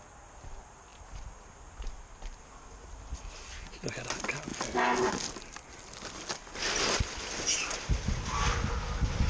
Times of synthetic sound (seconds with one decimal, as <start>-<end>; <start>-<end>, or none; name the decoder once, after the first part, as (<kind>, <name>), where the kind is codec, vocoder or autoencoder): none

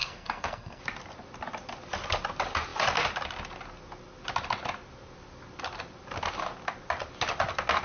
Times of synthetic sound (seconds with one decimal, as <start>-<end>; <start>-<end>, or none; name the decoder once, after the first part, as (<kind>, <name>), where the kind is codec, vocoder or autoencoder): 0.0-0.8 (codec, SNAC)

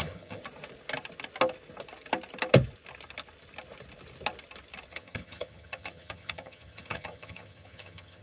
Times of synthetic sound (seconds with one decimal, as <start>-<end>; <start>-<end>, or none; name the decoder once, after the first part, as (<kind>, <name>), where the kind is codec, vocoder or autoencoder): 0.0-0.4 (vocoder, HiFi-GAN); 4.9-8.2

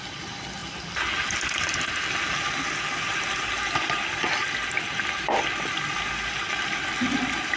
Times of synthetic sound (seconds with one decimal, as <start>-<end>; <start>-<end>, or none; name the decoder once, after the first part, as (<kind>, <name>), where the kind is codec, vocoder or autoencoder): none

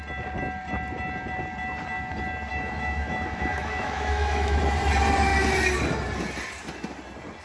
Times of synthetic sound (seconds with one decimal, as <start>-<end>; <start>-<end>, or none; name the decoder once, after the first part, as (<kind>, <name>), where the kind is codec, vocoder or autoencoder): 2.5-4.6 (autoencoder, DAC-VAE)

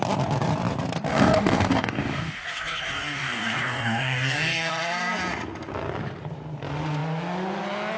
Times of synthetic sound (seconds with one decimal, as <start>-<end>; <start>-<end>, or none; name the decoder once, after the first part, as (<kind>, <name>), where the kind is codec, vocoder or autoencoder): 1.1-4.7 (codec, DAC)

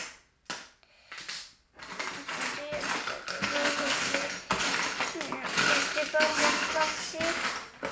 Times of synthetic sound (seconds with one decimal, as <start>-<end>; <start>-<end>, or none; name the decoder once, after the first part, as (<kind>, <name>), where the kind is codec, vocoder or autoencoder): 3.3-4.3 (codec, SNAC); 6.3-7.0

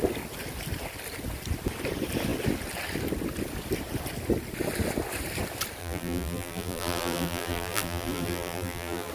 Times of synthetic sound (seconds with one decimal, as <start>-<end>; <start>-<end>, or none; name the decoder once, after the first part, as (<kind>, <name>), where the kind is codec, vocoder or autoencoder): 5.8-9.1 (vocoder, BigVGAN v2)